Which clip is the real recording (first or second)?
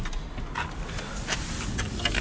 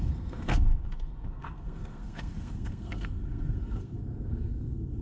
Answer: first